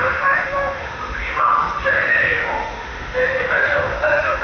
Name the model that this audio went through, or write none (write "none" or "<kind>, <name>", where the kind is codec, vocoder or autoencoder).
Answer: autoencoder, DAC-VAE